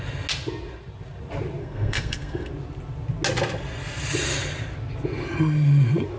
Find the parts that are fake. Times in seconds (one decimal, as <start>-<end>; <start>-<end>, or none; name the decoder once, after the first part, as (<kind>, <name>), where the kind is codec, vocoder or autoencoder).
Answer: 1.6-2.5 (codec, SNAC)